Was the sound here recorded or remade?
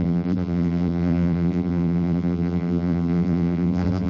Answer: remade